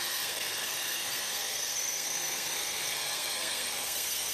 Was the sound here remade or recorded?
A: remade